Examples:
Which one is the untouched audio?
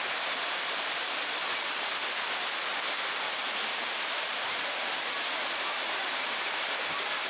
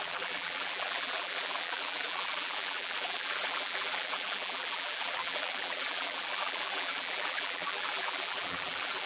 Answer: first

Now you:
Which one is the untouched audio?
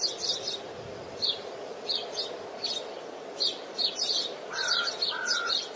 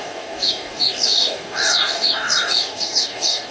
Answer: first